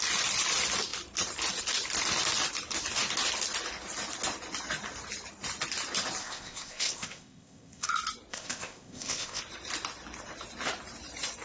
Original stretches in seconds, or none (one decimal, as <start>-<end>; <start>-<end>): 0.0-6.2; 7.9-8.3; 9.4-11.4